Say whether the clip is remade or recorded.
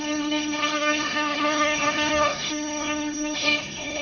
remade